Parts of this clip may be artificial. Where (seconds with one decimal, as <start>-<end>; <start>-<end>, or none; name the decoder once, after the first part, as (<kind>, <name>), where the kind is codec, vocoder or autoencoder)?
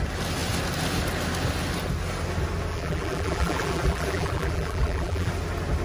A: 2.7-5.3 (vocoder, BigVGAN v2)